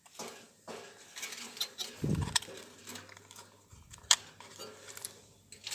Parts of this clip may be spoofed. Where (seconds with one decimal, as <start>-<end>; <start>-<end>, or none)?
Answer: 2.8-5.2